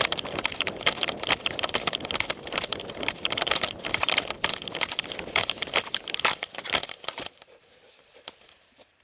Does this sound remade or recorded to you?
recorded